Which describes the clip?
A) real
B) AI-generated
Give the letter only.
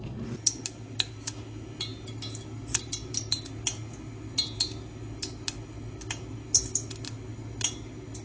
A